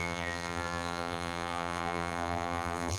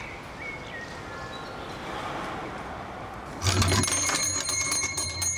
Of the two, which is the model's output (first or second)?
first